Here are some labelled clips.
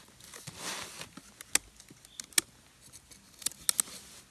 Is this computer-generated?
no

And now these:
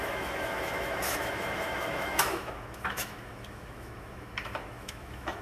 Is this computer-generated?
yes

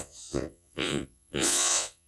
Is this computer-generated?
yes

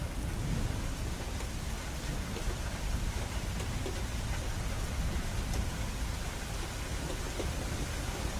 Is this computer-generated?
no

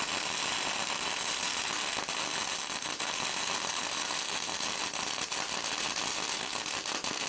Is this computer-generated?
no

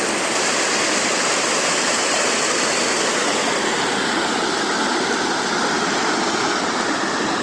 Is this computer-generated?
no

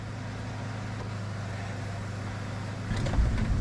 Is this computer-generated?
no